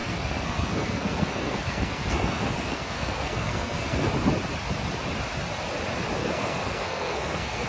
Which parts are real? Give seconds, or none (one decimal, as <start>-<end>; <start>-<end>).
4.1-6.2